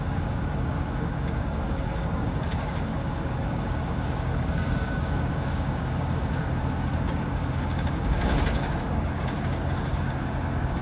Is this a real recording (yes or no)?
no